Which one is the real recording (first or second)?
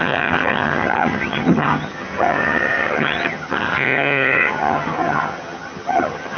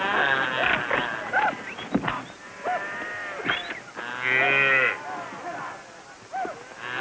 second